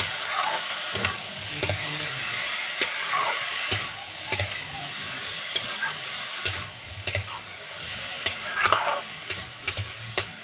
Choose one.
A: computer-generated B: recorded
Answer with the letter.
A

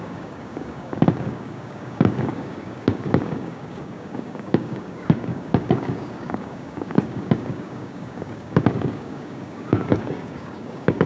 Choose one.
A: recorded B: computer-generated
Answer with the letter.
B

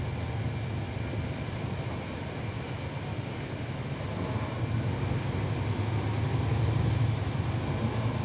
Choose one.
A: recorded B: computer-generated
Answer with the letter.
A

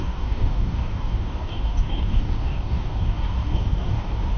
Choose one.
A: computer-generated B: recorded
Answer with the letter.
A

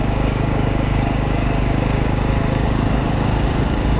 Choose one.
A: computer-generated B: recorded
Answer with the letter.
A